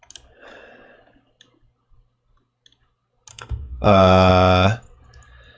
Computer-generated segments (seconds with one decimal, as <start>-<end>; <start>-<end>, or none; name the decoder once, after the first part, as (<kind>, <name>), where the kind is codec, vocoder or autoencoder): 3.3-4.3 (codec, SNAC)